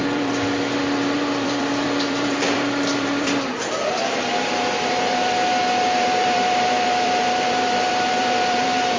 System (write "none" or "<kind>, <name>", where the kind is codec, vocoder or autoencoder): vocoder, BigVGAN v2